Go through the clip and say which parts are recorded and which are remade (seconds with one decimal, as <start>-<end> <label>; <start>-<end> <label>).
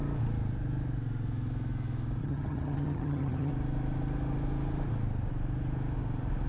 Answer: 0.0-2.2 recorded; 2.2-3.5 remade; 3.5-6.5 recorded